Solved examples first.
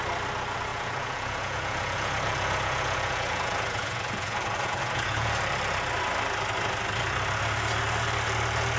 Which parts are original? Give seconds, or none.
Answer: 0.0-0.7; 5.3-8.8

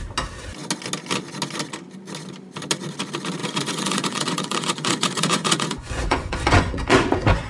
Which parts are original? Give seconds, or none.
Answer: 0.0-3.4